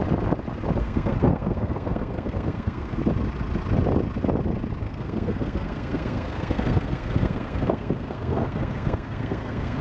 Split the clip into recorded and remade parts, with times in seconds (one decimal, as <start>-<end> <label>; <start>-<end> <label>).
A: 0.0-0.8 recorded; 0.8-3.0 remade; 3.0-4.8 recorded; 4.8-9.8 remade